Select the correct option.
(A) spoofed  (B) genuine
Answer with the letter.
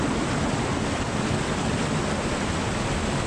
B